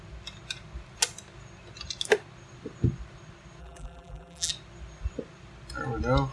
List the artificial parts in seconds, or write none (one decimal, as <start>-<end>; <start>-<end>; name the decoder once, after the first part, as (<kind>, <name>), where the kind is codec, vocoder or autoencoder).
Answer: 3.6-4.5 (vocoder, BigVGAN v2)